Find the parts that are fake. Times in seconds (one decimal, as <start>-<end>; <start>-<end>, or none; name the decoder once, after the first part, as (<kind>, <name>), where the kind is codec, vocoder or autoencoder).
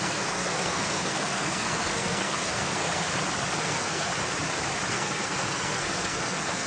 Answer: 0.0-3.1 (codec, SNAC); 3.6-4.1; 4.9-6.7